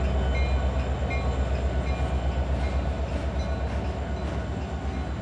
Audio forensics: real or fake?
real